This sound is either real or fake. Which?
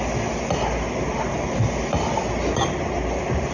real